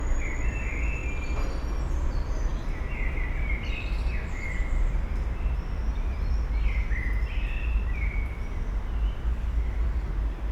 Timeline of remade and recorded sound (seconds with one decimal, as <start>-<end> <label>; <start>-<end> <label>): 0.0-9.3 recorded; 9.3-10.1 remade; 10.1-10.5 recorded